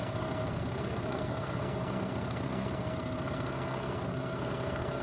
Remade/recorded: remade